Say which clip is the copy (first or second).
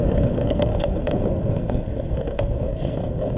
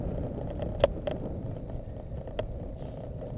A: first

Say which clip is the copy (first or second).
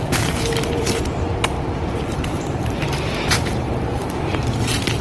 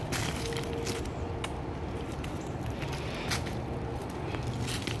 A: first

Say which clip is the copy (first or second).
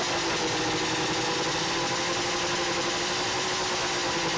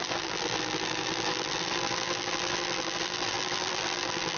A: second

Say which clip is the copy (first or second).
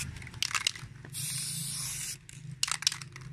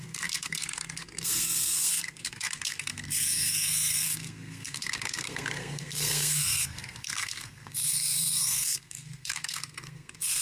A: second